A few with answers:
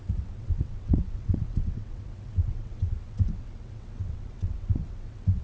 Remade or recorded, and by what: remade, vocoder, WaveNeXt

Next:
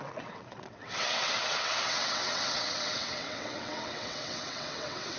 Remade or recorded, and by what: remade, vocoder, WaveNeXt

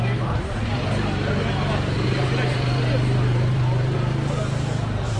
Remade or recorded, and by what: remade, vocoder, BigVGAN v2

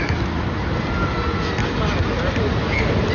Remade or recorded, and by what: recorded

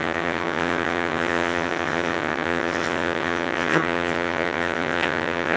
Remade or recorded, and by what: remade, vocoder, HiFi-GAN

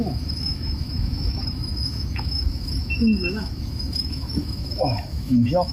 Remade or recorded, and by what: remade, autoencoder, DAC-VAE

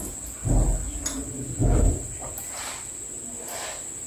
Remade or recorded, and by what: recorded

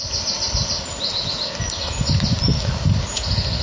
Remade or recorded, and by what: recorded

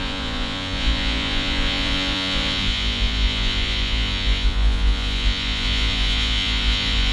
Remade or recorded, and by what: remade, vocoder, Vocos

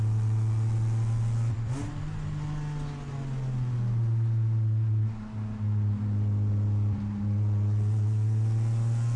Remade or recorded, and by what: recorded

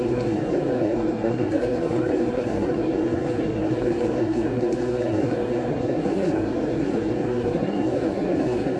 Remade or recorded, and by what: remade, codec, SNAC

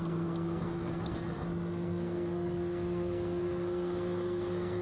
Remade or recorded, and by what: remade, codec, SNAC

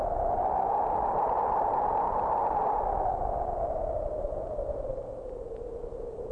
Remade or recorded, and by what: recorded